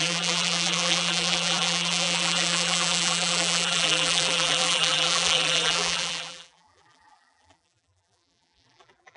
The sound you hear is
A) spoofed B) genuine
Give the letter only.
A